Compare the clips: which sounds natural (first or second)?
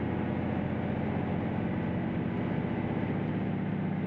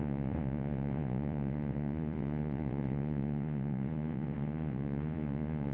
first